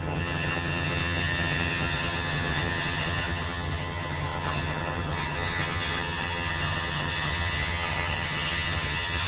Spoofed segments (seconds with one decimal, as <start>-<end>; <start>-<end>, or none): 0.0-9.3